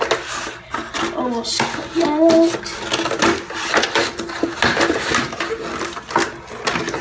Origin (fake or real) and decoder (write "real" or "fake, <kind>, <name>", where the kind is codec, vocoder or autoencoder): real